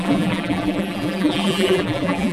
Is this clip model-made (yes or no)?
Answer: yes